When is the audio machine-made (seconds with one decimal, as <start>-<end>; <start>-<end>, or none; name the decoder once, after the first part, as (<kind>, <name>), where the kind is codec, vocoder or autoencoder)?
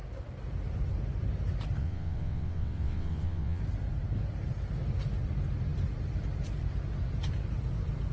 1.8-3.6 (vocoder, WaveNeXt)